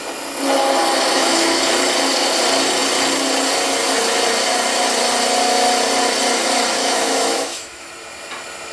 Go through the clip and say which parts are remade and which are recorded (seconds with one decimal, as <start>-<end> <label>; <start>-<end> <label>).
0.0-1.1 recorded; 1.1-1.6 remade; 1.6-6.8 recorded; 6.8-7.9 remade; 7.9-8.7 recorded